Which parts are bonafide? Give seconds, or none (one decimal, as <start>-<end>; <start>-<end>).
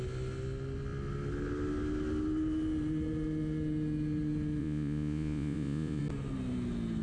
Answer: 0.0-4.6; 6.0-7.0